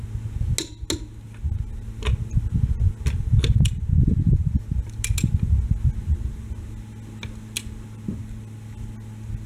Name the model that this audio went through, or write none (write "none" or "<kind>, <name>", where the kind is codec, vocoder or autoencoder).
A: none